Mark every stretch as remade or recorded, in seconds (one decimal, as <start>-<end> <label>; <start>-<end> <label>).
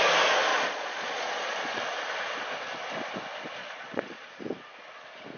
0.0-0.5 recorded; 0.5-1.8 remade; 1.8-3.6 recorded; 3.6-4.3 remade; 4.3-5.4 recorded